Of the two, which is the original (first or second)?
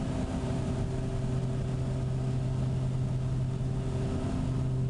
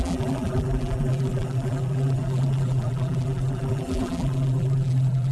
first